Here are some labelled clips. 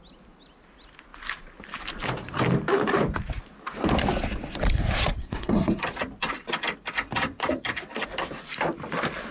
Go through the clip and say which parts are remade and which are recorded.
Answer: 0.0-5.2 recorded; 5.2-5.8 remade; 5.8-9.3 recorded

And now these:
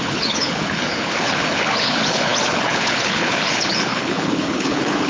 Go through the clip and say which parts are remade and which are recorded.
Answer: 0.0-5.1 remade